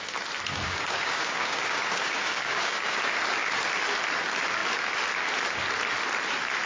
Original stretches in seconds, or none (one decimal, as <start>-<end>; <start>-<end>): 0.0-0.5; 3.0-6.7